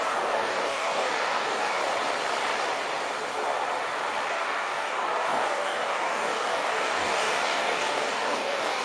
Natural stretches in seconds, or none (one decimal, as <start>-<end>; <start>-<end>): 1.8-4.3